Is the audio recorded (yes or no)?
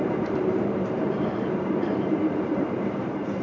no